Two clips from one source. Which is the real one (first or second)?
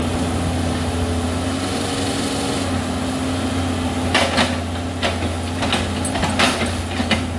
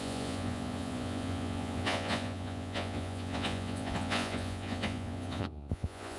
first